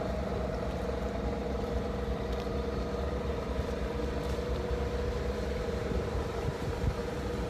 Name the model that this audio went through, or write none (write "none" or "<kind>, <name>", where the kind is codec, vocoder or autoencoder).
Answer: vocoder, BigVGAN v2